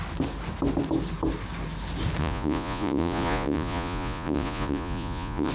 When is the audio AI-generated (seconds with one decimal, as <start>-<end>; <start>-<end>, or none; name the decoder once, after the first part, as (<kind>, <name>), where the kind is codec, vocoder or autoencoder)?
2.2-5.5 (vocoder, Vocos)